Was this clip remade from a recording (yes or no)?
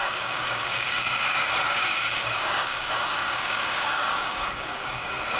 yes